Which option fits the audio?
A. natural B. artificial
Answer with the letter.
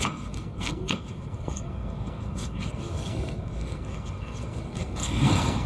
B